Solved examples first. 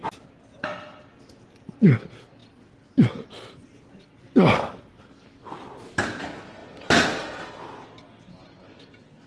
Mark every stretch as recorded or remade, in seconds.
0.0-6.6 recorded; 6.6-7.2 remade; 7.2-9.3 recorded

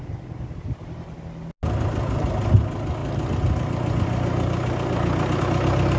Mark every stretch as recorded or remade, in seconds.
0.0-6.0 recorded

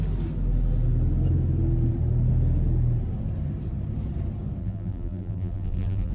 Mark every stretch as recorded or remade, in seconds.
0.0-4.6 recorded; 4.6-6.1 remade

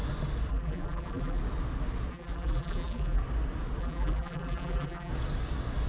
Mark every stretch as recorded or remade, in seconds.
0.0-0.5 recorded; 0.5-1.4 remade; 1.4-2.1 recorded; 2.1-3.2 remade; 3.2-3.8 recorded; 3.8-5.1 remade; 5.1-5.9 recorded

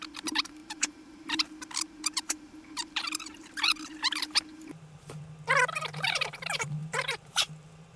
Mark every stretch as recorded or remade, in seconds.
0.0-5.2 remade; 5.2-5.8 recorded; 5.8-8.0 remade